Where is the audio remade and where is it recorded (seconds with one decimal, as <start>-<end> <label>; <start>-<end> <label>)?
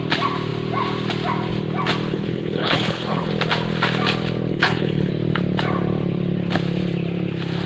0.0-2.1 recorded; 2.1-3.3 remade; 3.3-4.5 recorded; 4.5-5.1 remade; 5.1-7.7 recorded